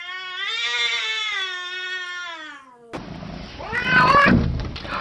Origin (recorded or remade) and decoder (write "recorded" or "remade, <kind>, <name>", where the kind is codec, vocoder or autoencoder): recorded